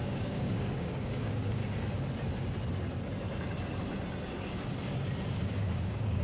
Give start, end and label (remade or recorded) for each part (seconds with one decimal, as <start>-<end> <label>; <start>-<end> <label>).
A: 0.0-1.6 remade; 1.6-5.3 recorded; 5.3-6.2 remade